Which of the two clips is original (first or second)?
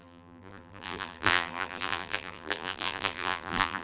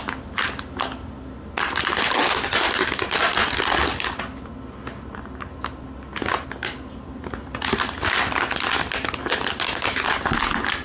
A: second